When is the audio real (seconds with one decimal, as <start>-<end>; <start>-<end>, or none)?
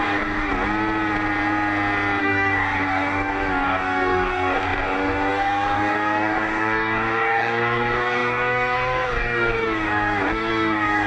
0.5-2.2